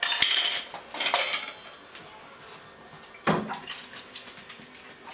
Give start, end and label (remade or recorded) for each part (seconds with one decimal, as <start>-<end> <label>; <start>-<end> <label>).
0.0-5.1 recorded